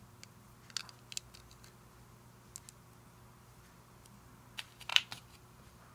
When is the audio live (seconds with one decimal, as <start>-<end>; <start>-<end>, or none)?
0.0-4.9